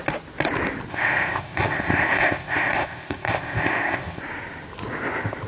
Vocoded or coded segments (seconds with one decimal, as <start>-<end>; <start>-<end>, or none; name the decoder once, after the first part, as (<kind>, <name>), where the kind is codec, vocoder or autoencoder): 0.9-4.2 (codec, ZipCodec)